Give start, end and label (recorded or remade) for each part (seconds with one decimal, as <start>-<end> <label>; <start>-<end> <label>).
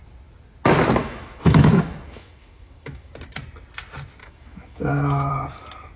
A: 0.0-1.0 recorded; 1.0-3.1 remade; 3.1-4.2 recorded; 4.2-5.3 remade; 5.3-6.0 recorded